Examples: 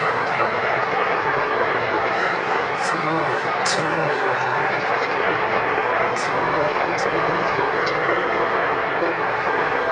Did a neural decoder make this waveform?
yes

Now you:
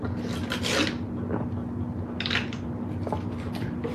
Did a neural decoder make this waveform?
no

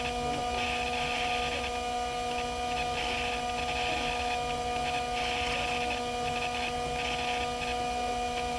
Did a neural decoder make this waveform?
no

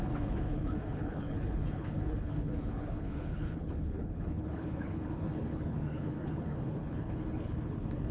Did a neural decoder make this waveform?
yes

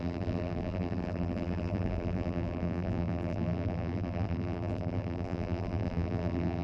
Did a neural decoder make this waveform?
yes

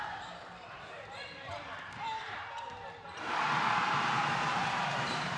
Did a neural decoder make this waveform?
yes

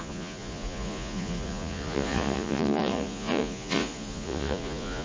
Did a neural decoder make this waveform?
yes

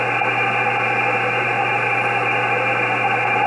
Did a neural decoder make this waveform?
no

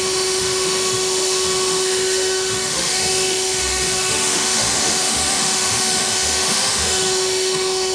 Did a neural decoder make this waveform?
yes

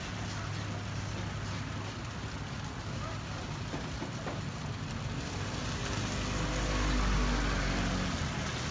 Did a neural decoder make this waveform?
no